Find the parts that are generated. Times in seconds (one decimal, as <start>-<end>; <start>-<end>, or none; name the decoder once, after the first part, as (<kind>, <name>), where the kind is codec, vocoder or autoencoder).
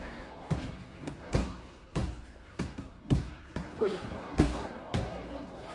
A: 0.0-5.7 (codec, SNAC)